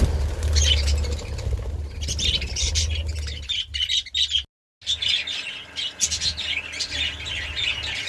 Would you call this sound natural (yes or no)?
yes